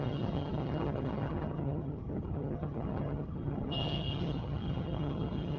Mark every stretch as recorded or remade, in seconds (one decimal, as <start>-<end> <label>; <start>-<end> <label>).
0.0-5.6 remade